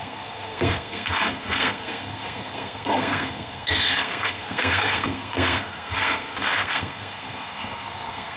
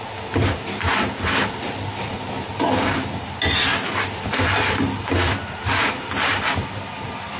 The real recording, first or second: second